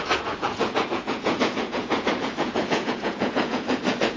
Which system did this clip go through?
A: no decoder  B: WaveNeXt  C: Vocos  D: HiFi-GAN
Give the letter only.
C